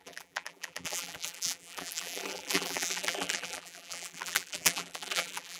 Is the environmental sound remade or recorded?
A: remade